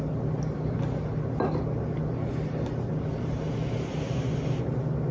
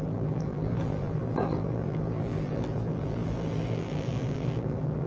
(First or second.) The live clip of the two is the first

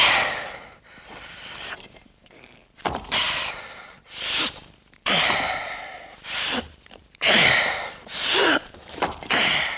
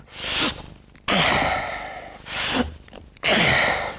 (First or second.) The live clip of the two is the second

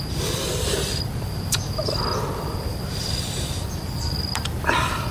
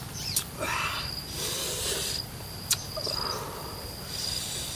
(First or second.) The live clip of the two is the second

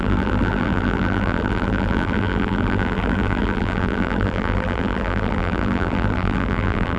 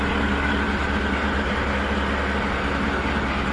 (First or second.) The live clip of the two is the second